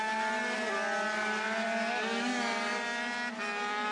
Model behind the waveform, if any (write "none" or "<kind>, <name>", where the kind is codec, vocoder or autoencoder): none